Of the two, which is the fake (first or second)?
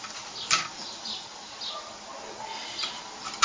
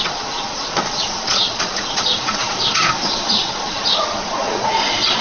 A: second